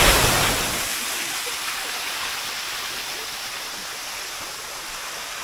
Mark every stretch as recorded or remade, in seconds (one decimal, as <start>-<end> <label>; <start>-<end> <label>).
0.0-5.4 recorded